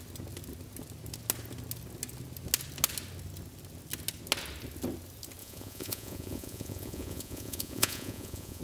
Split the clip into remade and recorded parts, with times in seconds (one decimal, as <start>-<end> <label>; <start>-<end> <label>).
0.0-5.4 recorded; 5.4-8.6 remade